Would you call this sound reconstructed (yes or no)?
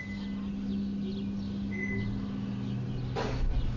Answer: no